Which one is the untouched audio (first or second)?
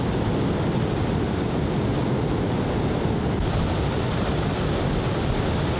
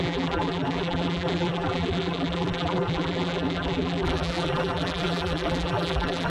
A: first